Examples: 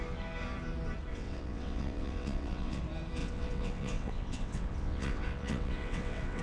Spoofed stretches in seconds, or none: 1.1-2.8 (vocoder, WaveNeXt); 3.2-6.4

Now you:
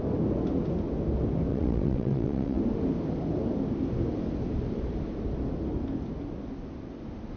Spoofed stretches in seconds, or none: 1.5-2.6 (vocoder, WaveNeXt)

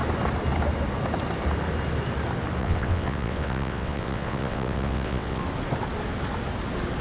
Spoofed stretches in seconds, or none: 2.6-5.4 (vocoder, WaveNeXt)

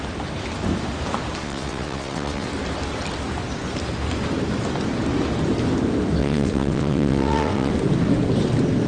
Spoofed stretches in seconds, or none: 1.4-2.5 (vocoder, WaveNeXt); 6.2-7.7

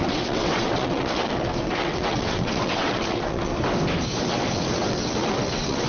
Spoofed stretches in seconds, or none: 0.0-3.5 (vocoder, WaveNeXt); 4.2-5.9